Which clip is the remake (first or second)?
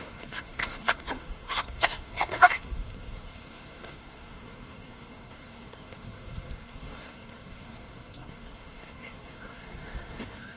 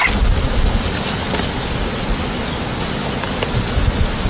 first